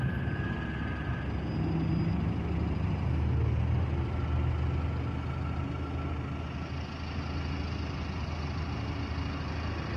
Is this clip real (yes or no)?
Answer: yes